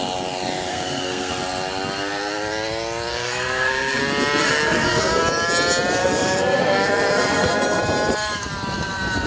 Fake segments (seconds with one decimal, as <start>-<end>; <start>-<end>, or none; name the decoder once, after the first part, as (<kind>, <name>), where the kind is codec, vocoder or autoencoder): 0.7-1.3 (codec, SNAC); 3.1-4.0; 4.4-5.2; 6.0-7.8